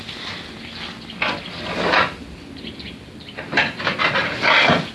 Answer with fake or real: fake